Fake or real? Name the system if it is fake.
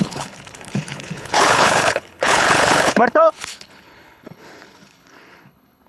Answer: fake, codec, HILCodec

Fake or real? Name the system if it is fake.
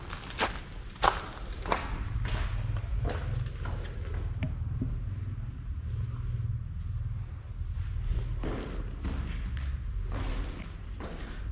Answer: real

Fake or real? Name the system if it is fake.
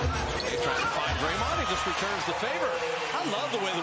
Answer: real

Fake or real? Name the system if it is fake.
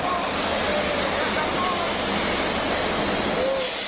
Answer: real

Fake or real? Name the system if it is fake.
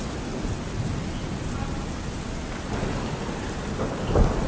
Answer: real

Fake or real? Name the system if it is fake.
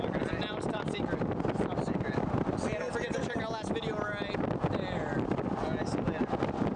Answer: real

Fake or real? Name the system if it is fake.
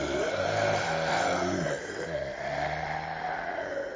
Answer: real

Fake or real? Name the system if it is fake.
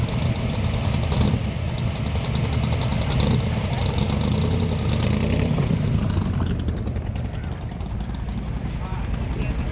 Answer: real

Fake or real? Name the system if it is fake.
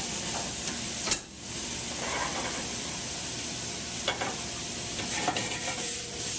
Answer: real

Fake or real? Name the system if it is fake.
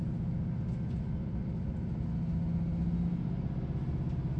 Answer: real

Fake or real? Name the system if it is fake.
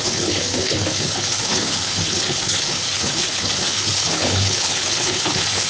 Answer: fake, codec, HILCodec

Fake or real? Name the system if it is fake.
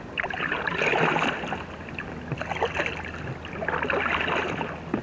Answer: real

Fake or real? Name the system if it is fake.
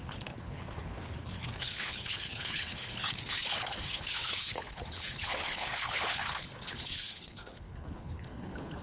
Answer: fake, codec, HILCodec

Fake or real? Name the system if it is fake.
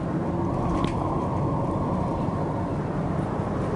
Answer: real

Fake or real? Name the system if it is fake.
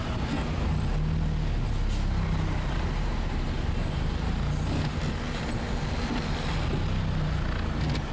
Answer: real